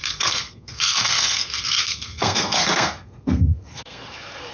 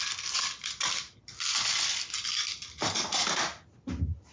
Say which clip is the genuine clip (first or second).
second